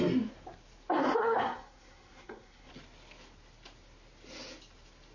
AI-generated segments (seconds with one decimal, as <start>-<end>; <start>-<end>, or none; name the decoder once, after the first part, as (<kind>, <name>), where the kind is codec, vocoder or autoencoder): 1.2-2.7 (codec, SNAC)